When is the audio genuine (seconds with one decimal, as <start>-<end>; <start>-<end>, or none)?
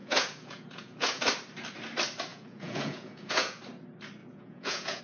1.2-2.3; 3.6-4.2